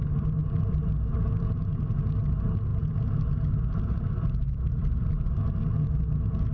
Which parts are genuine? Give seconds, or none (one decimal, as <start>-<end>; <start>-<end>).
0.0-6.5